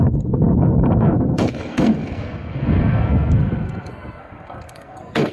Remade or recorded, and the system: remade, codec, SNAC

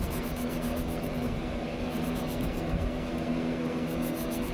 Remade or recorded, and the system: remade, codec, SNAC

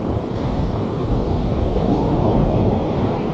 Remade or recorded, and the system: remade, codec, DAC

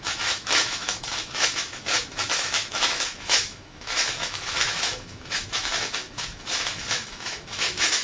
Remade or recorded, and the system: remade, autoencoder, DAC-VAE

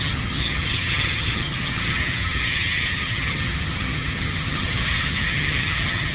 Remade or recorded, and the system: remade, vocoder, HiFi-GAN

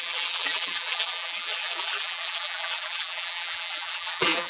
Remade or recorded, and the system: remade, vocoder, BigVGAN v2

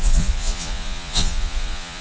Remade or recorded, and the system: remade, vocoder, Vocos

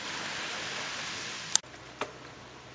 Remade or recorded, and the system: recorded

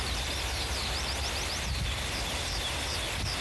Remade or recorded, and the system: recorded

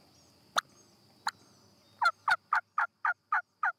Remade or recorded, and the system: recorded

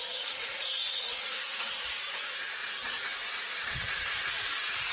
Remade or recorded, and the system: remade, vocoder, Vocos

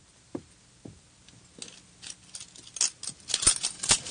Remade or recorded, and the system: recorded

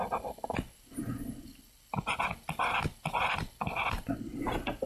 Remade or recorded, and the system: recorded